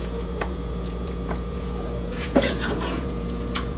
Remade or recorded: remade